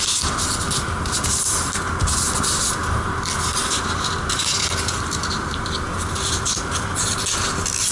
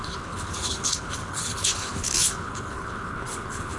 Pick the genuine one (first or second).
first